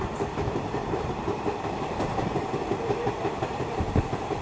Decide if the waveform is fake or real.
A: fake